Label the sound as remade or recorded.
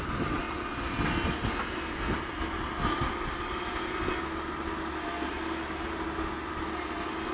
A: recorded